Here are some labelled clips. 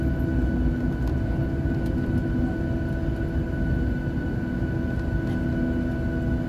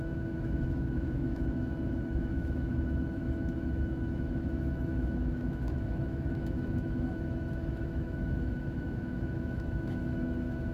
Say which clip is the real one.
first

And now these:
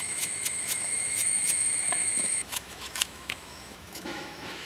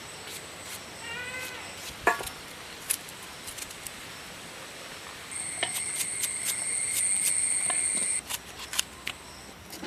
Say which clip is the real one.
second